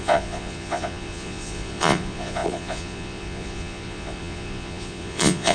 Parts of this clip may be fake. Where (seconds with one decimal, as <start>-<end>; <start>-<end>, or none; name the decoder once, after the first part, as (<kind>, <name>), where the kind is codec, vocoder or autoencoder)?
0.0-5.5 (vocoder, Vocos)